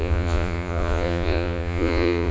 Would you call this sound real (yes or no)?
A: no